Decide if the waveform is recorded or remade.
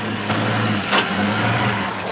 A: remade